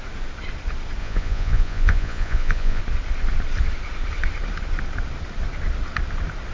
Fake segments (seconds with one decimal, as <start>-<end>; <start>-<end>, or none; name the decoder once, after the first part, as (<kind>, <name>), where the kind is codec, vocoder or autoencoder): 1.0-2.8 (vocoder, Vocos)